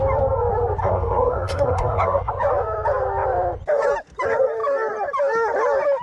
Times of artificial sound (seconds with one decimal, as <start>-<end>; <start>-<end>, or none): 0.8-2.3